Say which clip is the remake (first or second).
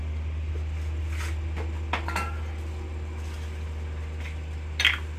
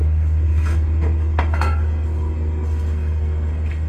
second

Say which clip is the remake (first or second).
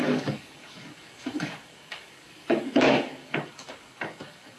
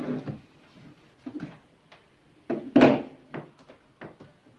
first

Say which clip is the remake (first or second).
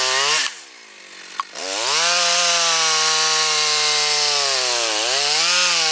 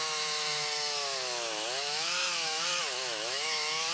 second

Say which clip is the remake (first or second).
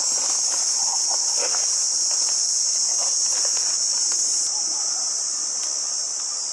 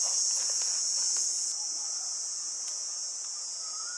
second